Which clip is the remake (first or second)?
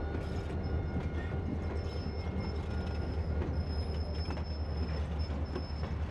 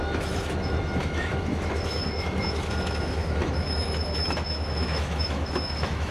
second